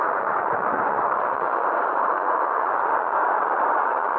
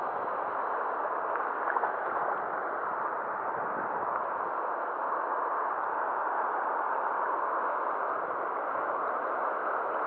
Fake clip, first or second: first